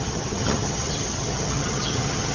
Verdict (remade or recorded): remade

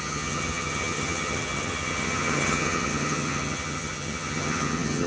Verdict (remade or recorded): remade